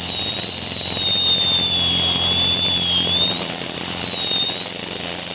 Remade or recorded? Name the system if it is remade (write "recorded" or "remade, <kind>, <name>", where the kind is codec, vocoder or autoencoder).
recorded